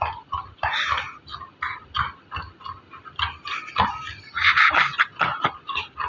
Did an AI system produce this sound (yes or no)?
no